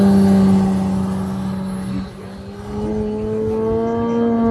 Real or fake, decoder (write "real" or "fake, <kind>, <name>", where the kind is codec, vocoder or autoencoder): real